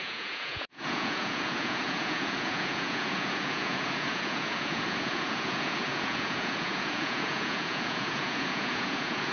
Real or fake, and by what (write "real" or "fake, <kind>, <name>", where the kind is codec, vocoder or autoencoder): fake, vocoder, Vocos